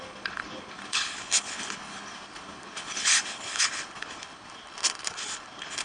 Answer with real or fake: fake